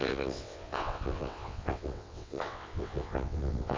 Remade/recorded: remade